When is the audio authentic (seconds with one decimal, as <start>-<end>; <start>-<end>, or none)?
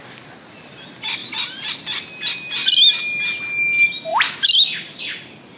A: 0.0-5.6